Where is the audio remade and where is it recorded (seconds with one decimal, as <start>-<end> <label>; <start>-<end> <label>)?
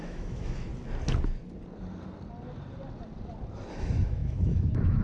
0.0-0.7 remade; 0.7-3.7 recorded; 3.7-5.0 remade